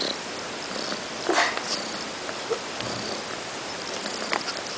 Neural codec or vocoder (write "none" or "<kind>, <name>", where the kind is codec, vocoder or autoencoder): none